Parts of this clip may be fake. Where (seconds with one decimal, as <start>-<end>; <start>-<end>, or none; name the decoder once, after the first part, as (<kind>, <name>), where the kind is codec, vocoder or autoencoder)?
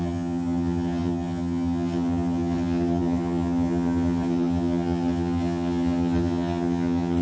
0.0-7.2 (vocoder, HiFi-GAN)